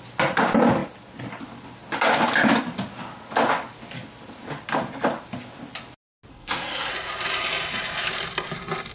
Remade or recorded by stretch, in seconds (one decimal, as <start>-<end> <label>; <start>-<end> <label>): 0.0-6.3 recorded; 6.3-6.9 remade; 6.9-8.9 recorded